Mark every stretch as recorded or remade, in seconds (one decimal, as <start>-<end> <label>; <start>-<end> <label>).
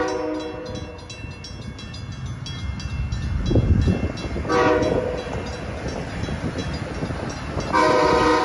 0.0-8.4 recorded